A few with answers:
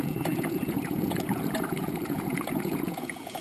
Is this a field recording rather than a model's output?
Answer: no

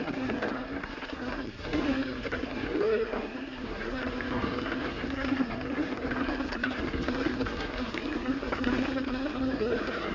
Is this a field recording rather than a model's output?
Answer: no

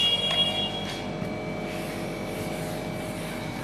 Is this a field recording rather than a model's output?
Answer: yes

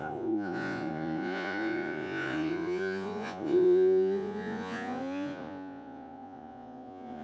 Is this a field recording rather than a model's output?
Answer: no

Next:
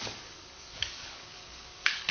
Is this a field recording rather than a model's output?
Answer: no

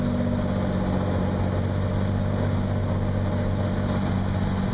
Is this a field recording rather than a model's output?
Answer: yes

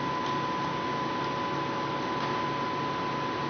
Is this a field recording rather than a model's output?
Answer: yes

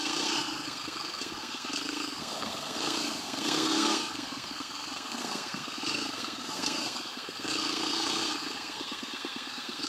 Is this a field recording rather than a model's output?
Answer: no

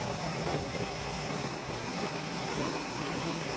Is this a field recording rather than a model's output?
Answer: no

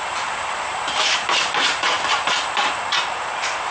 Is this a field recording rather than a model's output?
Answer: no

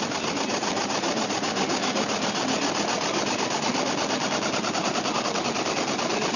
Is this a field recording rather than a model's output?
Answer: yes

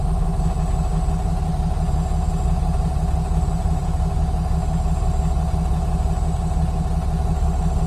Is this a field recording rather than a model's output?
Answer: yes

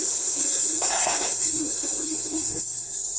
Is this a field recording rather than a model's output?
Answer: no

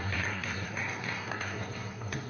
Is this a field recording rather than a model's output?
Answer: no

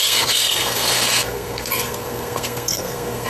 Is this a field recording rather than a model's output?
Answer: no